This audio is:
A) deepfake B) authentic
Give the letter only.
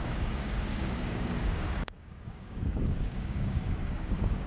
A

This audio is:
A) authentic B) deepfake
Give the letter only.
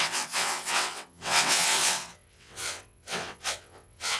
B